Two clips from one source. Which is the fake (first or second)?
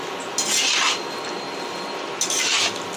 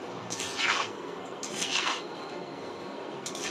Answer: second